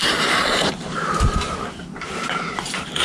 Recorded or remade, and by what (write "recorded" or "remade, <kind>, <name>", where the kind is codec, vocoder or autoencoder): remade, vocoder, BigVGAN v2